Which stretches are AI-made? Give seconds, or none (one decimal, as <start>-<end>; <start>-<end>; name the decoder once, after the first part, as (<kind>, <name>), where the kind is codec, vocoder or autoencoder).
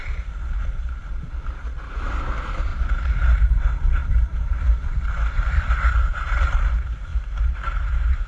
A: 0.0-1.0 (vocoder, BigVGAN v2); 1.6-8.3